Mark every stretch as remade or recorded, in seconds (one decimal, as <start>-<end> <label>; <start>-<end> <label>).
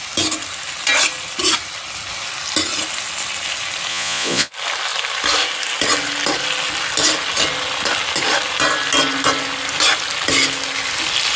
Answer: 0.0-3.9 recorded; 3.9-4.5 remade; 4.5-11.4 recorded